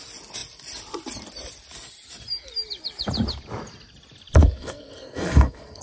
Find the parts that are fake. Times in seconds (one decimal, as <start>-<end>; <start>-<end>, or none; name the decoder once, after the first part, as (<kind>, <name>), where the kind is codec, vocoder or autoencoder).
4.4-5.8 (codec, SNAC)